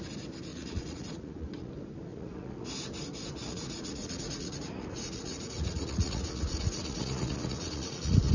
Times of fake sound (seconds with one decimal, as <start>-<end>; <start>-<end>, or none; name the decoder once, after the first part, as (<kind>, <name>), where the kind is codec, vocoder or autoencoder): 0.5-1.7 (vocoder, Vocos); 2.1-2.7; 3.4-8.3